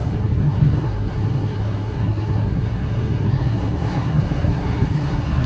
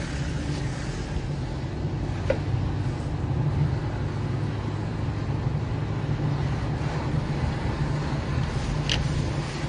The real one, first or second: second